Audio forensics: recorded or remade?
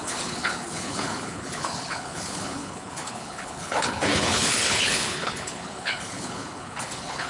remade